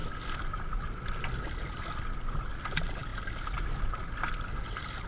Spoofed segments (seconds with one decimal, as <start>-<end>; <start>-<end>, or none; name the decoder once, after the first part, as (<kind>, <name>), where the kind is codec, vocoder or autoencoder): none